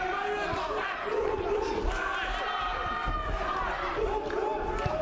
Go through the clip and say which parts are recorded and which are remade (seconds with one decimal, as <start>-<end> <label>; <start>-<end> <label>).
0.0-1.1 recorded; 1.1-1.7 remade; 1.7-2.9 recorded; 2.9-3.7 remade; 3.7-5.0 recorded